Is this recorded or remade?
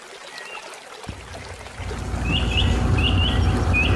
recorded